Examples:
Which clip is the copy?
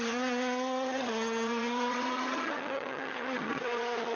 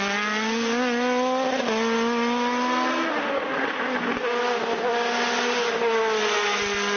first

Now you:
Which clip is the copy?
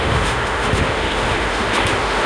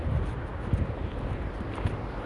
first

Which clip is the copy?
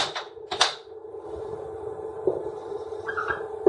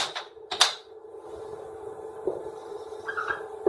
first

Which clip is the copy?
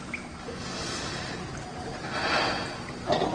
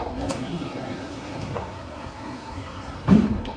second